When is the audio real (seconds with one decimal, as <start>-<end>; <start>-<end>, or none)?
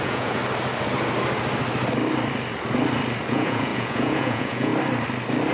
0.4-3.3; 4.7-5.5